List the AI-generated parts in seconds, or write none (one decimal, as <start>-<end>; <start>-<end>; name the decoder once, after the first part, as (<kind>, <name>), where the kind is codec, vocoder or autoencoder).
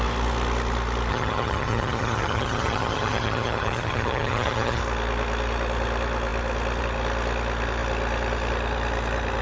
1.1-4.8 (vocoder, HiFi-GAN)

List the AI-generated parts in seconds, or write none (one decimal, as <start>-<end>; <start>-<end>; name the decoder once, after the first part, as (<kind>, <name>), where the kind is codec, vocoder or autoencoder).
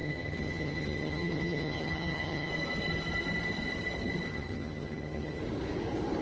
0.0-2.5 (vocoder, HiFi-GAN); 4.3-5.4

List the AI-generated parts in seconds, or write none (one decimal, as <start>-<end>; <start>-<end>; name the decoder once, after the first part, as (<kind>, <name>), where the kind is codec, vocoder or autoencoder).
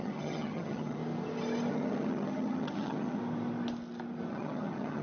0.0-1.0 (vocoder, HiFi-GAN); 1.7-3.2; 4.3-5.0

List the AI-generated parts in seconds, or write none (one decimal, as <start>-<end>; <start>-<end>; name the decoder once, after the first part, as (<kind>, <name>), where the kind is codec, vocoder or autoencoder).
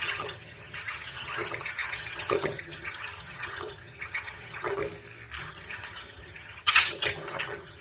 0.0-4.8 (vocoder, HiFi-GAN); 5.4-7.8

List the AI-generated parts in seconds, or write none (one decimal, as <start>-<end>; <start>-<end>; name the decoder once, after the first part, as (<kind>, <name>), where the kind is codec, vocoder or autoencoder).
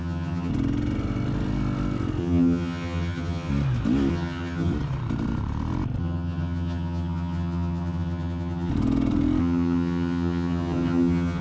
0.0-0.5 (vocoder, HiFi-GAN); 2.2-3.5; 4.1-4.7; 6.0-8.7; 9.4-11.4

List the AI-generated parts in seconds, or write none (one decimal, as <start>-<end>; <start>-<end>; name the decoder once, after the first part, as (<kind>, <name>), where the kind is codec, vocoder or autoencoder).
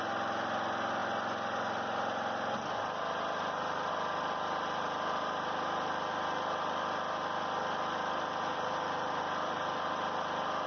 none